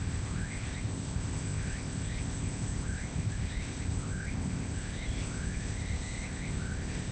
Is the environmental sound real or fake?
fake